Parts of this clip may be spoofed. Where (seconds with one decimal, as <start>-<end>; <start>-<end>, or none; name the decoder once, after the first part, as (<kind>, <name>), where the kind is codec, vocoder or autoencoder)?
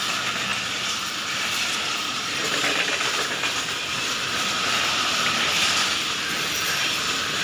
0.0-7.4 (vocoder, BigVGAN v2)